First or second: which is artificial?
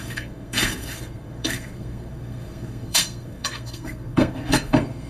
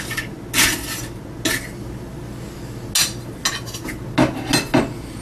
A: first